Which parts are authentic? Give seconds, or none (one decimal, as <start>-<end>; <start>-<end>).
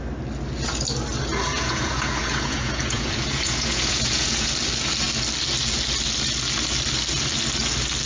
0.0-1.5; 4.5-8.1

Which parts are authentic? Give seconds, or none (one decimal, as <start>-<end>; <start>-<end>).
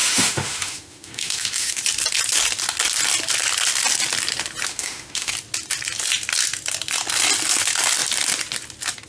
1.8-4.7; 5.3-9.1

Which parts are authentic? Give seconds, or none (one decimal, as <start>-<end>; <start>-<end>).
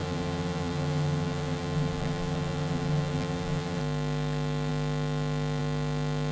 3.8-6.3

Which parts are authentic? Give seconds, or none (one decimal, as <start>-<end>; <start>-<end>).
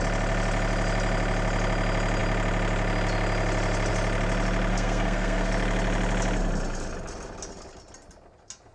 0.0-4.7; 5.5-8.7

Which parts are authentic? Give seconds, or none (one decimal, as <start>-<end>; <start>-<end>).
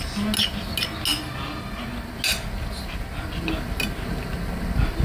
0.0-5.0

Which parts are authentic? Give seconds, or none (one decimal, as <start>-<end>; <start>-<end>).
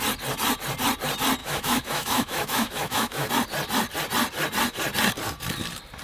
0.0-1.4; 3.3-6.0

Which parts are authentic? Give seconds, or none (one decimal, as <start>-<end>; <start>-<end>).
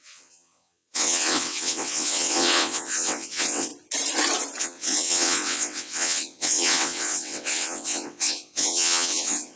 3.7-4.6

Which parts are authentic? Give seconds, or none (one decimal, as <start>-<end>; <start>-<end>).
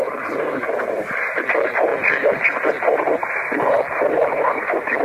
1.9-3.1